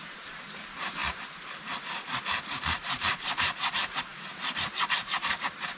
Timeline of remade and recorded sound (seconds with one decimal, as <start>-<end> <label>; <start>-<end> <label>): 0.0-1.0 remade; 1.0-2.4 recorded; 2.4-4.1 remade; 4.1-4.6 recorded; 4.6-5.8 remade